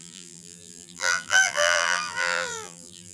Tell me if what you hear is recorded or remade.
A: remade